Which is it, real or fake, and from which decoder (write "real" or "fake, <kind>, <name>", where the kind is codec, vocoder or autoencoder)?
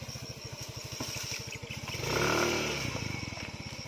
real